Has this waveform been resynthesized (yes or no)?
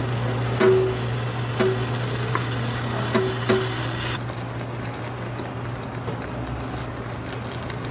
no